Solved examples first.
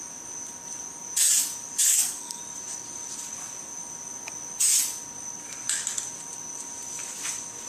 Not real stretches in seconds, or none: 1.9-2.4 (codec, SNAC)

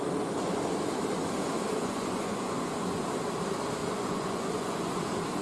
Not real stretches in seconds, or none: 1.7-3.0 (vocoder, Vocos); 3.8-5.0

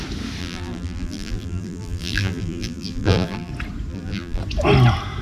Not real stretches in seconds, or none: 0.4-3.5 (vocoder, BigVGAN v2); 3.9-4.4

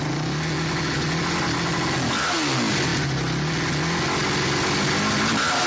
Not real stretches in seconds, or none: none

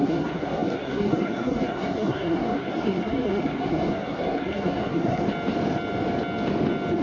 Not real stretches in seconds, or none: 0.0-5.2 (codec, SNAC)

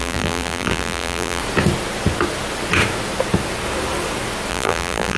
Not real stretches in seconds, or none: 0.0-1.4 (vocoder, BigVGAN v2); 4.5-5.2

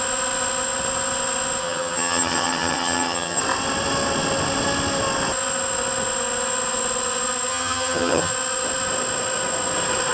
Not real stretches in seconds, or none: 1.6-3.4 (vocoder, HiFi-GAN); 7.5-8.3

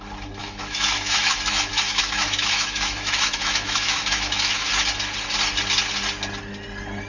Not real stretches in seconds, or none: 0.4-4.7 (autoencoder, DAC-VAE)